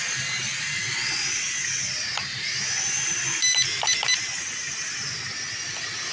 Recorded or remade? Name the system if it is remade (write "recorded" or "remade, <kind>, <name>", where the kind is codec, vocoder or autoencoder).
recorded